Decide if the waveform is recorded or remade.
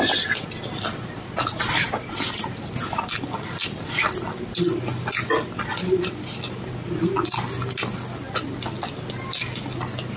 recorded